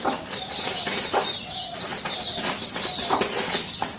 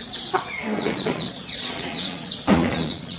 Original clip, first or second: first